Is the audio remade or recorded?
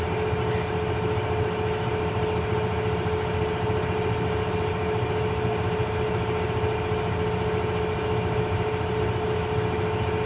recorded